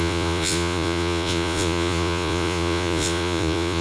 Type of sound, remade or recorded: remade